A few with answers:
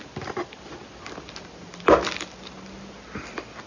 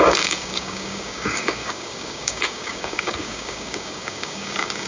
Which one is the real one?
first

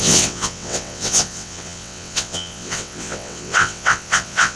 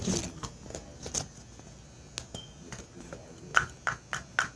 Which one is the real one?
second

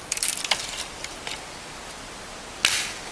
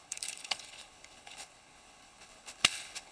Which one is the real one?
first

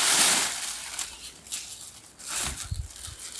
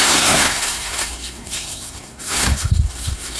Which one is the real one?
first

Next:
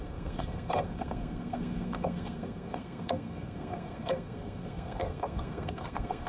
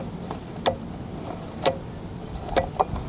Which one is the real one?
second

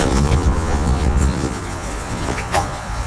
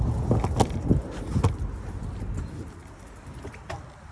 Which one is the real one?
second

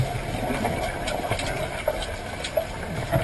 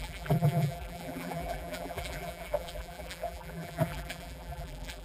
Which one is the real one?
first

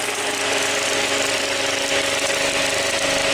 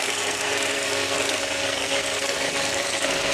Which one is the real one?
first